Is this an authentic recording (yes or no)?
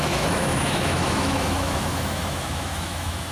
no